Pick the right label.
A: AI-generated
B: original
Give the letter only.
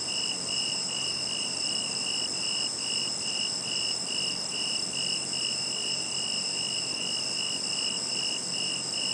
B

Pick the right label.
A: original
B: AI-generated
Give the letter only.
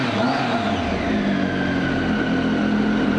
A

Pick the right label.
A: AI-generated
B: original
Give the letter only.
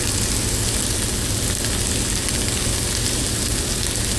B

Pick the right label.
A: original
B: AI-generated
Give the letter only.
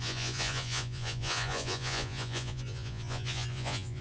B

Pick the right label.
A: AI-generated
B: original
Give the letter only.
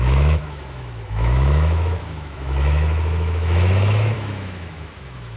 A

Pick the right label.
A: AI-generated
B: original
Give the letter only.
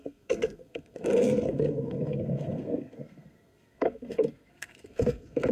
A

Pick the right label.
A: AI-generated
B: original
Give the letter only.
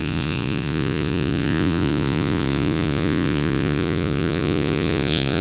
A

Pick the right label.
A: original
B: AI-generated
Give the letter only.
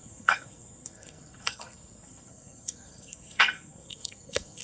B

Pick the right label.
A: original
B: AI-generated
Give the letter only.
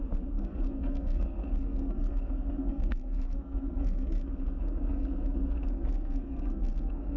B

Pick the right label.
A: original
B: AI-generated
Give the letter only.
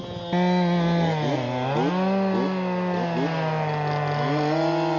A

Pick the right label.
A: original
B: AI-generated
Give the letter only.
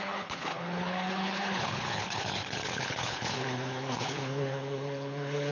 B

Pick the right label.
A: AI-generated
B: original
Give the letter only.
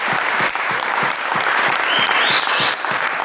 B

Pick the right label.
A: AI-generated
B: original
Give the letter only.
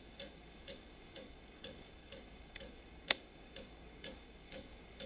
A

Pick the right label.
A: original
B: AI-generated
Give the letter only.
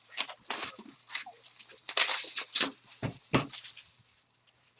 B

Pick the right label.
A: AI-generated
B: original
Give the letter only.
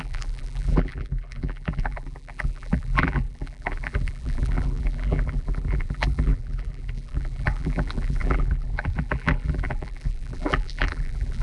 A